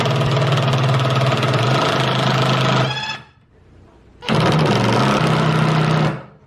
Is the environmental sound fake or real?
real